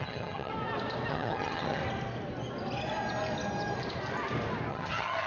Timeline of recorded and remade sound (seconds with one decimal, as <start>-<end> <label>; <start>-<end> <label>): 0.0-0.5 remade; 0.5-1.1 recorded; 1.1-1.8 remade; 1.8-4.7 recorded; 4.7-5.3 remade